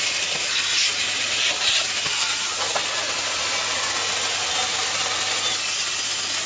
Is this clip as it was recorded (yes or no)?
yes